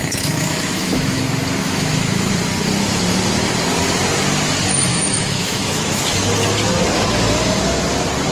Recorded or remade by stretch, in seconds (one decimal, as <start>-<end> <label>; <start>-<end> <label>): 0.0-1.2 remade; 1.2-1.6 recorded; 1.6-2.3 remade; 2.3-4.9 recorded; 4.9-6.0 remade; 6.0-8.3 recorded